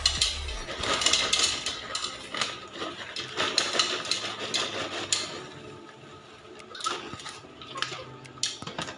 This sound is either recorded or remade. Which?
recorded